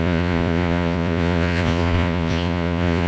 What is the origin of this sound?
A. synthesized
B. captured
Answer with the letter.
A